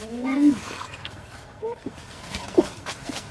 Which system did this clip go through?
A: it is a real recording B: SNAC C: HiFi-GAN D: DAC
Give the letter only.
B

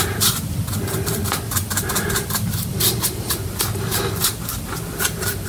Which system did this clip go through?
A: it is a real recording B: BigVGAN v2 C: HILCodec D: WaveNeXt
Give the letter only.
B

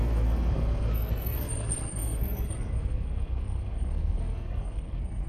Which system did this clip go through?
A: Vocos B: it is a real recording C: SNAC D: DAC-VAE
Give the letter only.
C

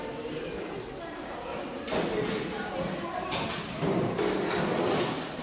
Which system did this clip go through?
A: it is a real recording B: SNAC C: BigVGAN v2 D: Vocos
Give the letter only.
A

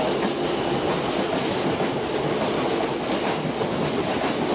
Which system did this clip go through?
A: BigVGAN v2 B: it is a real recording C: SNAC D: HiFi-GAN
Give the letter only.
B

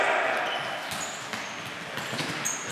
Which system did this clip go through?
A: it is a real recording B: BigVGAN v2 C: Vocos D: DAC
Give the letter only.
A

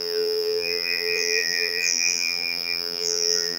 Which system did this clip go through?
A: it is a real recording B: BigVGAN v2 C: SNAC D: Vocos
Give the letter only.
B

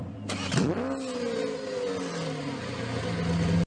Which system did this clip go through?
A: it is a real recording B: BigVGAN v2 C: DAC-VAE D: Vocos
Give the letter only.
A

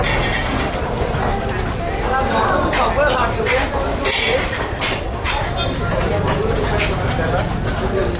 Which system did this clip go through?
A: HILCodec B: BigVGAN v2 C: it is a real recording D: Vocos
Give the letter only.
C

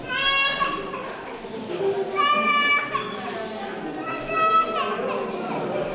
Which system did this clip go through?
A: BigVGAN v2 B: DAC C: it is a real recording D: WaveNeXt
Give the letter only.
C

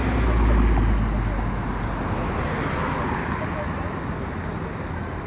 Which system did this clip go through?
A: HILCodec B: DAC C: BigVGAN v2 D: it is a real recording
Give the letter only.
D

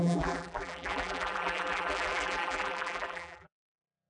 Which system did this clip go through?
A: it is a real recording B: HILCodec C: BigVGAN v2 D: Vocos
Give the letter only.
C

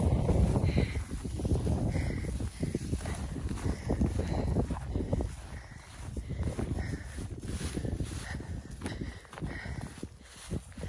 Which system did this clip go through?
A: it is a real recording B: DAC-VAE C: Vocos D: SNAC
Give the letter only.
A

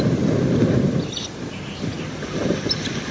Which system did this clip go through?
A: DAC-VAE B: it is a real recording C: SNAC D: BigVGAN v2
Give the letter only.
B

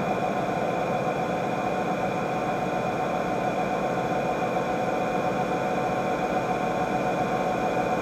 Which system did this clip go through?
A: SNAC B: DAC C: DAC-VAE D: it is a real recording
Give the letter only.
D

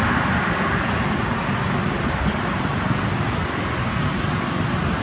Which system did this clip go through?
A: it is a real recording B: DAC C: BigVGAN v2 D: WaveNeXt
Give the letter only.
A